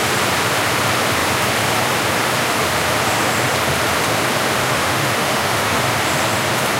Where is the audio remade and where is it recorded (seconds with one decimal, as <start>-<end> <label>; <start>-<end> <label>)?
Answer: 0.0-4.6 recorded; 4.6-5.8 remade; 5.8-6.8 recorded